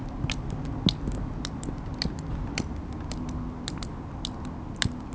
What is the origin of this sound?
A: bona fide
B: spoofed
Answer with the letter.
A